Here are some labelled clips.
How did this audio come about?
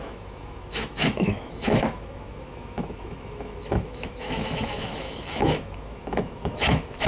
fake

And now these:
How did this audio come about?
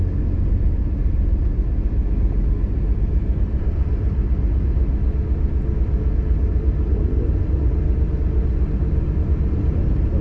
real